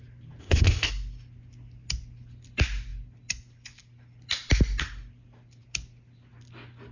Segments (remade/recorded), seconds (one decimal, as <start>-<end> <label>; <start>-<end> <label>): 0.0-0.4 recorded; 0.4-0.9 remade; 0.9-6.9 recorded